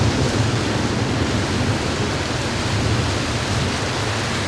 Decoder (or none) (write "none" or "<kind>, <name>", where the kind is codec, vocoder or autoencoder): none